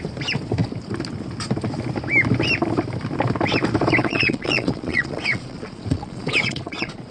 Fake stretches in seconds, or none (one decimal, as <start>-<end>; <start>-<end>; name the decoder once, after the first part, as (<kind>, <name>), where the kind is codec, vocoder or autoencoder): 4.0-7.1 (vocoder, Vocos)